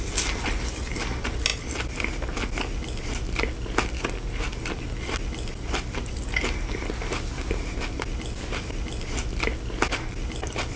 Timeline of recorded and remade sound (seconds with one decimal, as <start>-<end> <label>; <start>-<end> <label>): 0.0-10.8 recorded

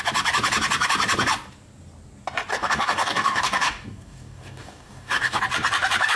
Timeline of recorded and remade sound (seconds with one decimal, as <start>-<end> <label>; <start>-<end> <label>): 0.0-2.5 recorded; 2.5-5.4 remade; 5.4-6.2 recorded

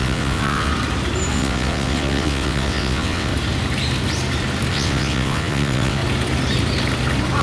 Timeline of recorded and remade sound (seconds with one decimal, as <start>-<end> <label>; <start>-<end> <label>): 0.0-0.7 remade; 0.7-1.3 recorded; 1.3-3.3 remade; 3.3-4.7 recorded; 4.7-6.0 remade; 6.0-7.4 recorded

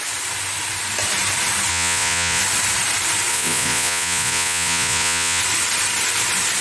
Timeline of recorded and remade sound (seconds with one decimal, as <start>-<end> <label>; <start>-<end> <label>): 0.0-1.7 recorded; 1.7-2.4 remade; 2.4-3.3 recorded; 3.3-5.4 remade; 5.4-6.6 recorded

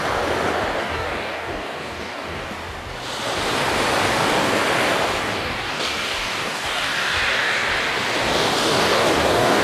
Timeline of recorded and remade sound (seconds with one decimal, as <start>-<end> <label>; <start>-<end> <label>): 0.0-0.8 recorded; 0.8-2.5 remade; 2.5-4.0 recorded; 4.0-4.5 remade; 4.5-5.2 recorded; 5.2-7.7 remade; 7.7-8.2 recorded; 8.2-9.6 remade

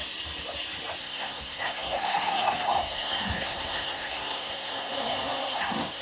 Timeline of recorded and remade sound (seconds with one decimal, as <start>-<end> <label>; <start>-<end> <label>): 0.0-1.0 recorded; 1.0-6.0 remade

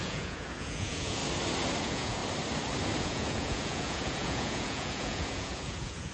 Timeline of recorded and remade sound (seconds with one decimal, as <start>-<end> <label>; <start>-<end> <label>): 0.0-1.2 remade; 1.2-1.8 recorded; 1.8-2.2 remade; 2.2-3.0 recorded; 3.0-6.1 remade

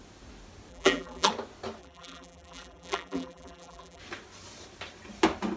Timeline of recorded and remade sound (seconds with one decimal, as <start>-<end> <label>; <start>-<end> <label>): 0.0-0.7 recorded; 0.7-1.3 remade; 1.3-1.8 recorded; 1.8-4.0 remade; 4.0-5.6 recorded